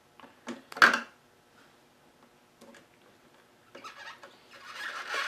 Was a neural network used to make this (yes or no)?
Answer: no